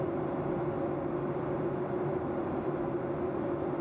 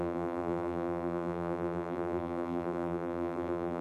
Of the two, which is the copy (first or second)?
second